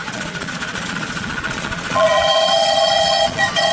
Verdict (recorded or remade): remade